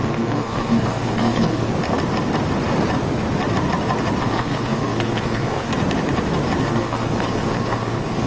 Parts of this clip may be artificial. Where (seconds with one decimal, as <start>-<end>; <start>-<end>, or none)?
0.0-1.7; 4.2-5.7; 6.6-8.3